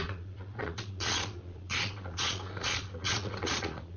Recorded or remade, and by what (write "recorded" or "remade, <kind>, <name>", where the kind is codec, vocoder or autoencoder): remade, vocoder, Vocos